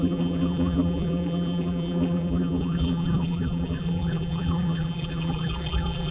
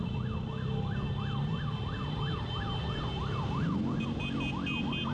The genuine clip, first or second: second